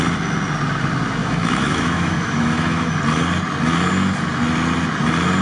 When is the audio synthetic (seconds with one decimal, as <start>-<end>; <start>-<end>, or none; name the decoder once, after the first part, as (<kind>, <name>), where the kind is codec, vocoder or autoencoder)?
1.2-2.9 (autoencoder, DAC-VAE)